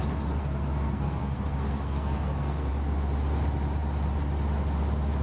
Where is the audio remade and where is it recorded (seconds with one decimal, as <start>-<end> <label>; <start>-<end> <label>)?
0.0-0.4 recorded; 0.4-2.7 remade; 2.7-5.2 recorded